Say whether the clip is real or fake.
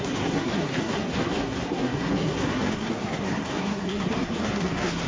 fake